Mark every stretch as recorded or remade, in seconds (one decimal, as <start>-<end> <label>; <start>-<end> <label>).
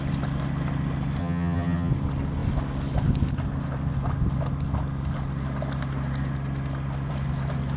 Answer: 0.0-1.2 recorded; 1.2-1.9 remade; 1.9-7.8 recorded